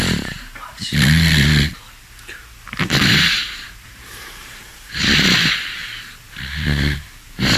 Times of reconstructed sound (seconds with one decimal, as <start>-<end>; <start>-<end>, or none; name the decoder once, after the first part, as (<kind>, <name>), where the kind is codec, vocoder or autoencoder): 0.0-1.7 (vocoder, BigVGAN v2); 3.0-5.8; 6.5-7.6

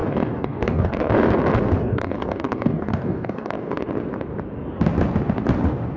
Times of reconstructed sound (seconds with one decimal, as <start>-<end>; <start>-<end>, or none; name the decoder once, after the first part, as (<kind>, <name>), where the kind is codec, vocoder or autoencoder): 0.0-1.3 (codec, DAC); 1.8-3.9

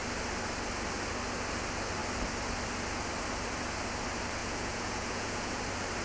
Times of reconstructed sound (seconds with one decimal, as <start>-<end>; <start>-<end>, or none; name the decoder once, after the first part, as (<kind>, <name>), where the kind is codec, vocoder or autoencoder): 4.4-5.6 (vocoder, Vocos)

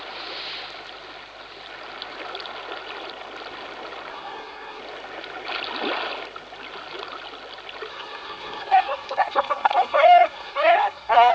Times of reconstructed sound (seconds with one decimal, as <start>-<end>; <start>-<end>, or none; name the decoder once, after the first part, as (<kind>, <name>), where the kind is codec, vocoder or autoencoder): 4.1-4.8 (codec, SNAC); 7.9-11.3